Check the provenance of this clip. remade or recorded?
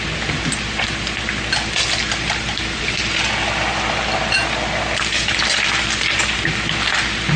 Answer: recorded